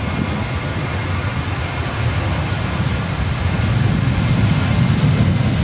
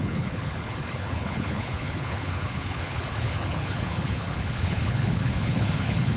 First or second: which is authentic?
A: first